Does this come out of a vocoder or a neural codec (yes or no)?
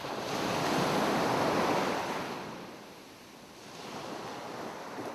no